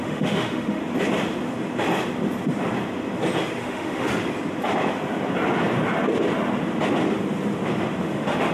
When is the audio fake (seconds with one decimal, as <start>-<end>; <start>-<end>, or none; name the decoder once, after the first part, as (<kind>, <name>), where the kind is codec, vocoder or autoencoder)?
0.0-0.8 (autoencoder, DAC-VAE); 3.6-4.1; 8.0-8.5